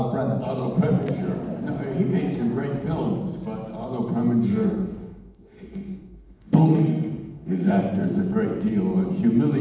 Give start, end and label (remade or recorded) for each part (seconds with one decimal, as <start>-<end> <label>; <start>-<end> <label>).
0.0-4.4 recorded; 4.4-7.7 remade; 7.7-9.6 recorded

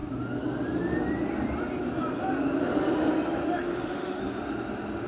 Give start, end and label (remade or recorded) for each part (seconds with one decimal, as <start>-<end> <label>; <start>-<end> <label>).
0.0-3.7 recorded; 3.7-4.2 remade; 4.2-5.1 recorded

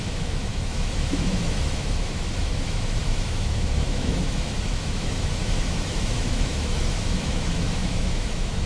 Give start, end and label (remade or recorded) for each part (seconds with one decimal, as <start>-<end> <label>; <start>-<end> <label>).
0.0-8.7 remade